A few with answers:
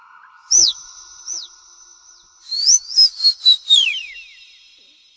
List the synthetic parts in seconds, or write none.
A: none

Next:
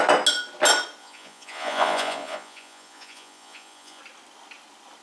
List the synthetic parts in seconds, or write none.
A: 1.0-4.0 (vocoder, Vocos)

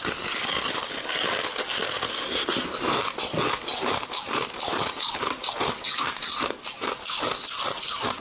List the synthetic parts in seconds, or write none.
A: 3.7-6.3 (vocoder, BigVGAN v2)

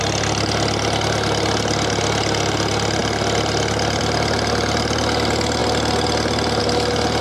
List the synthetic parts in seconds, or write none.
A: none

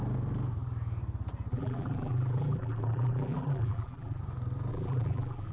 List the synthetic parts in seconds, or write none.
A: 1.5-4.2 (vocoder, BigVGAN v2); 4.7-5.5